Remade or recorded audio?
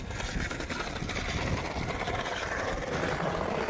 recorded